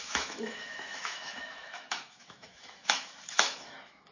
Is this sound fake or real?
fake